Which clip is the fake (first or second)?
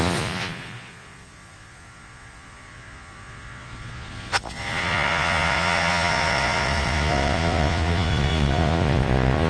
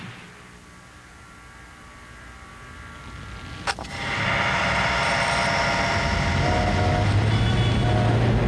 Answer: first